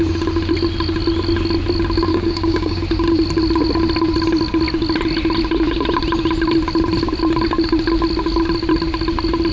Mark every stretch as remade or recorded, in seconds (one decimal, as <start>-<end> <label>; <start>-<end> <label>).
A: 0.0-2.1 recorded; 2.1-2.8 remade; 2.8-9.5 recorded